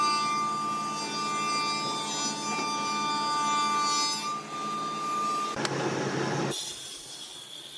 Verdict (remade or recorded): recorded